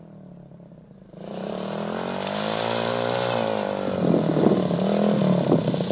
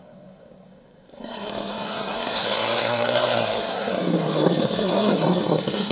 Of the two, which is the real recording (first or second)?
first